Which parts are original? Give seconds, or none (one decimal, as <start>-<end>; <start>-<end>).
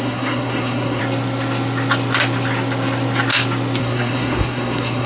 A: 1.0-3.8